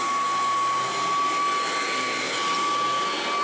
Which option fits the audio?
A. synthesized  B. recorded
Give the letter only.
B